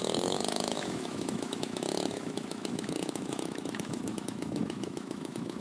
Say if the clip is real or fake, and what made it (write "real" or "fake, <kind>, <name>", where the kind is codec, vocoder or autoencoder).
fake, autoencoder, DAC-VAE